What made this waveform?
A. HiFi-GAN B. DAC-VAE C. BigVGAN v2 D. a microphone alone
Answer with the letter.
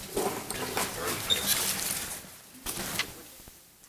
D